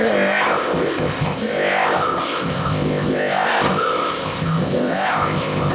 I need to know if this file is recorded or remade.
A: remade